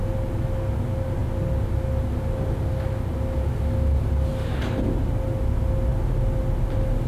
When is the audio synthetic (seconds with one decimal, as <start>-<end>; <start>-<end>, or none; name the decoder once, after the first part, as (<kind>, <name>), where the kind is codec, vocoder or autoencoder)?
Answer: none